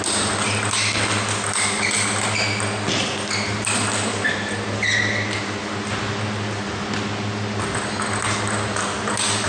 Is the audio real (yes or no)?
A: yes